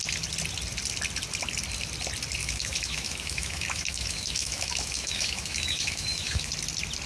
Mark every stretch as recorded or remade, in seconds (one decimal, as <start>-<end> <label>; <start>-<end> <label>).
0.0-2.4 recorded; 2.4-6.5 remade; 6.5-7.1 recorded